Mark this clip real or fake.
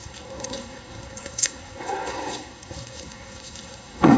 fake